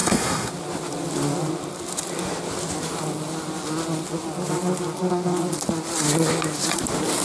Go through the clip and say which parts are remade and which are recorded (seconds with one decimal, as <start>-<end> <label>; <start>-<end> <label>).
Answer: 0.0-0.5 remade; 0.5-7.2 recorded